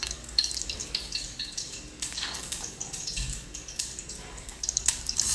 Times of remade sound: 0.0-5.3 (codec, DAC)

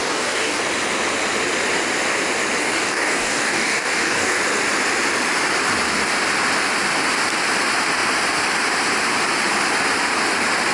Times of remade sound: 0.0-0.6 (codec, DAC); 2.6-4.4